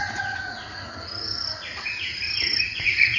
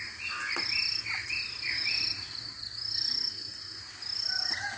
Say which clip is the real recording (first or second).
second